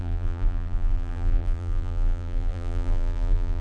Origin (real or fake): fake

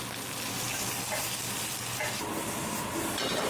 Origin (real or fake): real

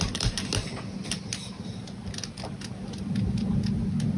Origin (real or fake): real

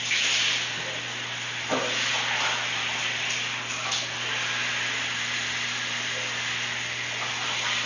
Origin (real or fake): real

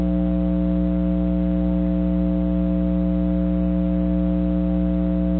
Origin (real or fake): real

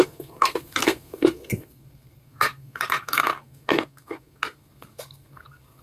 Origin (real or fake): fake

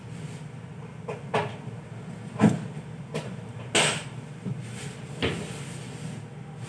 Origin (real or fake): real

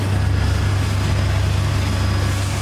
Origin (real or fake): real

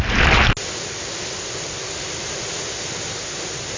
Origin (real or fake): real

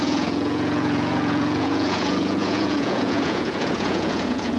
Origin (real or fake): fake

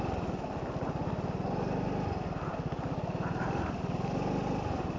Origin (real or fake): real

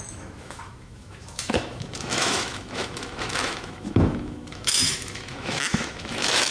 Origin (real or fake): fake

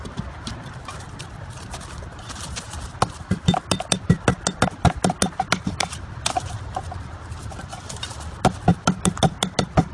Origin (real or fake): real